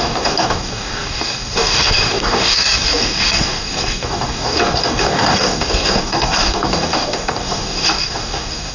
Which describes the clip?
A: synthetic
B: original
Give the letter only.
A